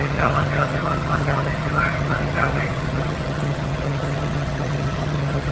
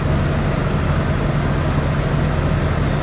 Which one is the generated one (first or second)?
first